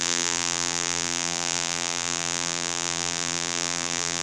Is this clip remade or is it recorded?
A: remade